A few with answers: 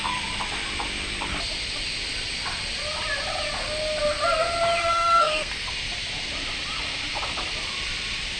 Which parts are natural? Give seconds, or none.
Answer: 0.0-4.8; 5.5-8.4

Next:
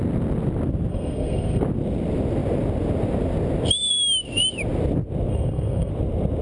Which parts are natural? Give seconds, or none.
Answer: 0.0-0.9; 1.6-5.3; 5.9-6.4

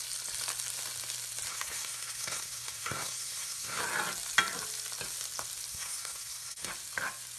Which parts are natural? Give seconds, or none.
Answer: 0.0-1.5; 3.8-5.7; 6.7-7.4